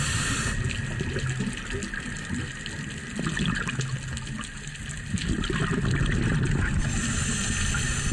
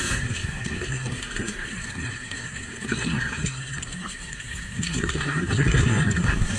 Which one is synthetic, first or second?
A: second